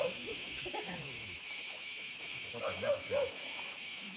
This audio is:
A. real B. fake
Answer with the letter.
B